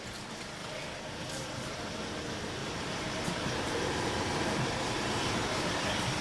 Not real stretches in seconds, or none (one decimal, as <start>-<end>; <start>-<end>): 0.6-1.3; 2.6-5.8